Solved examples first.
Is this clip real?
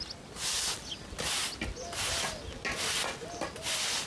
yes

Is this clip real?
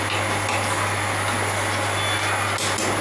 yes